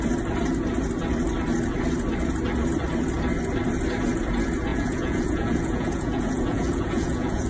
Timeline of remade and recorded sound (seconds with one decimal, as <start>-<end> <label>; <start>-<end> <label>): 0.0-4.7 recorded; 4.7-7.5 remade